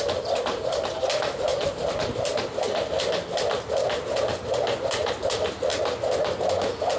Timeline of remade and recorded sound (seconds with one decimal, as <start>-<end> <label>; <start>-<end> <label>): 0.0-7.0 recorded

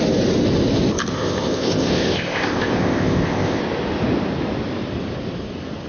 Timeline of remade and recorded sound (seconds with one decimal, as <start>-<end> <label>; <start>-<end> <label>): 0.0-1.1 recorded; 1.1-3.6 remade; 3.6-5.9 recorded

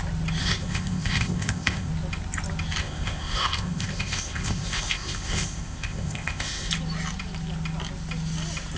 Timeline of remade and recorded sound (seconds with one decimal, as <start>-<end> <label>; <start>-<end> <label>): 0.0-0.4 recorded; 0.4-1.9 remade; 1.9-2.8 recorded; 2.8-6.7 remade; 6.7-8.8 recorded

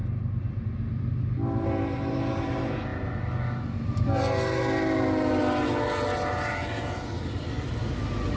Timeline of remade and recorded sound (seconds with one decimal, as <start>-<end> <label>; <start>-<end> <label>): 0.0-8.4 recorded

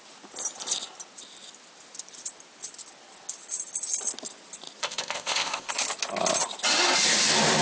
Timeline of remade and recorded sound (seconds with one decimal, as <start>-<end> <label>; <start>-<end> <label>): 0.0-4.8 recorded; 4.8-5.7 remade; 5.7-7.6 recorded

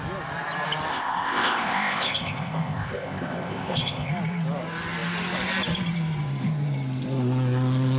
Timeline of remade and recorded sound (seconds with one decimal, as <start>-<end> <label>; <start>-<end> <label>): 0.0-0.9 recorded; 0.9-4.1 remade; 4.1-8.0 recorded

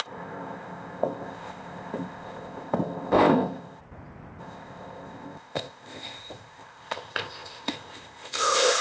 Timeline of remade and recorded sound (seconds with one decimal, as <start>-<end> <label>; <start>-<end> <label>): 0.0-3.8 remade; 3.8-4.4 recorded; 4.4-8.8 remade